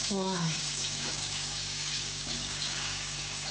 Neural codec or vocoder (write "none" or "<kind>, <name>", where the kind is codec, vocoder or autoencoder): codec, DAC